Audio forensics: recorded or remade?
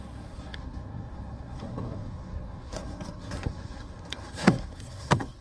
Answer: remade